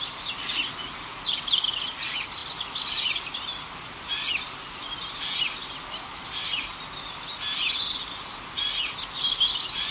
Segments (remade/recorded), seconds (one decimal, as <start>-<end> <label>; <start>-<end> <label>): 0.0-9.9 recorded